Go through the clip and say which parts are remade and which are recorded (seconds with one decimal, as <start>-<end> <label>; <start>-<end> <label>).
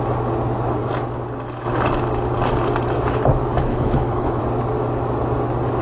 0.0-3.7 recorded; 3.7-4.4 remade; 4.4-5.8 recorded